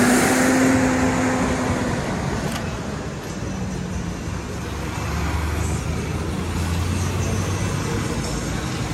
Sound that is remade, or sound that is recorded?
recorded